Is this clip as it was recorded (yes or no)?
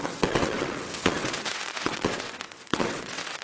no